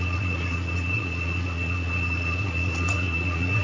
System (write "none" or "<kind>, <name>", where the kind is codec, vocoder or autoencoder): vocoder, Vocos